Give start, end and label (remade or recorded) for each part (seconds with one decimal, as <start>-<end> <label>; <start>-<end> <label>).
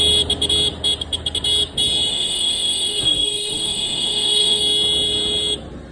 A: 0.0-2.1 recorded; 2.1-4.6 remade; 4.6-5.9 recorded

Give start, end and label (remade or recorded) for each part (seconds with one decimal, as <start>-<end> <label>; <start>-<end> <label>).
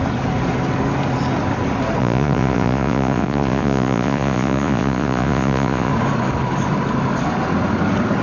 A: 0.0-2.0 recorded; 2.0-5.9 remade; 5.9-8.2 recorded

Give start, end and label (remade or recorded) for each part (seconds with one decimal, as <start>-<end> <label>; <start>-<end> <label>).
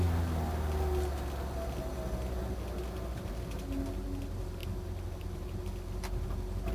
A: 0.0-6.7 recorded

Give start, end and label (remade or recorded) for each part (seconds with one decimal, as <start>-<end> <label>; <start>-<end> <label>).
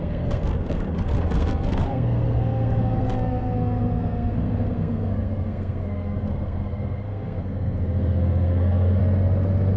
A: 0.0-9.0 remade; 9.0-9.8 recorded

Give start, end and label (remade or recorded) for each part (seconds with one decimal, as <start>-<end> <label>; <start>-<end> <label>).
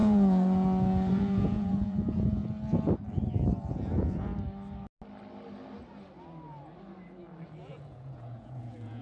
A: 0.0-2.4 remade; 2.4-3.5 recorded; 3.5-4.3 remade; 4.3-7.7 recorded; 7.7-9.0 remade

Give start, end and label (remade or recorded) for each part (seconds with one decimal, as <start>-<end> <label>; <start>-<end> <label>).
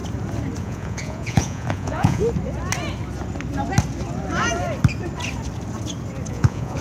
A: 0.0-0.6 recorded; 0.6-2.2 remade; 2.2-6.3 recorded; 6.3-6.8 remade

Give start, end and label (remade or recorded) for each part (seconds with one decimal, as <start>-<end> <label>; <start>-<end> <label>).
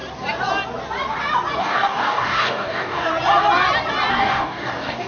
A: 0.0-1.6 recorded; 1.6-3.1 remade; 3.1-4.1 recorded; 4.1-5.1 remade